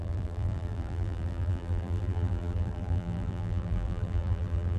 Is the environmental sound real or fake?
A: fake